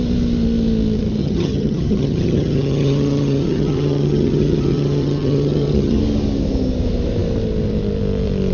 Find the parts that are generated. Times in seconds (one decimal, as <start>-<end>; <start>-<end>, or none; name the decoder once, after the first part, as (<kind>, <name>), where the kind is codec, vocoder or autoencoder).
1.2-6.0 (vocoder, HiFi-GAN)